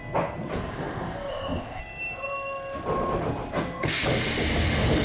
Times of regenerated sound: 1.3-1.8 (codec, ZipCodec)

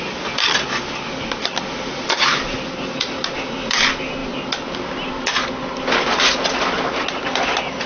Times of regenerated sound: none